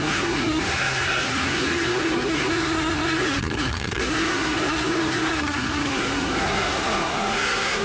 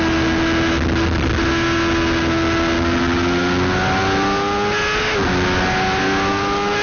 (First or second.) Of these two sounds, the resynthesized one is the first